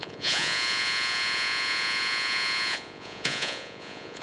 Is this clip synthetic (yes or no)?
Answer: yes